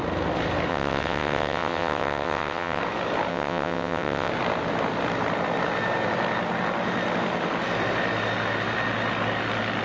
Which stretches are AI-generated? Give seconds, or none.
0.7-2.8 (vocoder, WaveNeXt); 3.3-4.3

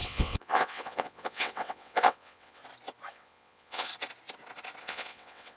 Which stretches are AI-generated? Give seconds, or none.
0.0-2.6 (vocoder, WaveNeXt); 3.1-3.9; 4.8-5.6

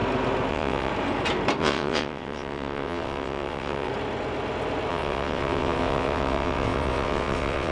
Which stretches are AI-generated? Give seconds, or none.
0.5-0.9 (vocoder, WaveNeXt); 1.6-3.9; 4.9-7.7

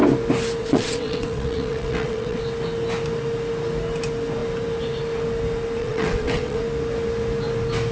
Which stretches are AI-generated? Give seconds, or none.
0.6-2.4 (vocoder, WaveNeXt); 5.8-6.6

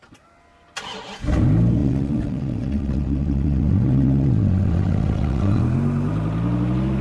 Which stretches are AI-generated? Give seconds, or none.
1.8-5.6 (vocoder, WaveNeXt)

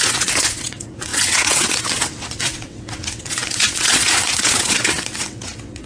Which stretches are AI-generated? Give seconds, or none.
0.0-5.9 (vocoder, WaveNeXt)